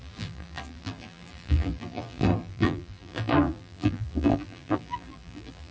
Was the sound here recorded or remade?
remade